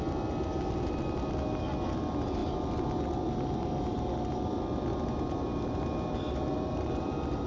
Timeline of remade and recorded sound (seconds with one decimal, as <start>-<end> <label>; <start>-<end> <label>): 0.0-4.9 recorded; 4.9-7.5 remade